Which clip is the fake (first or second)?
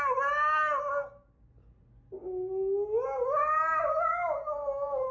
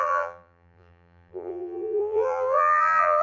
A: second